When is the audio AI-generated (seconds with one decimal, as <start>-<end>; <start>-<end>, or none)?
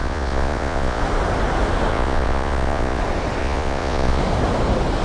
0.0-1.0; 1.9-3.0; 3.4-4.2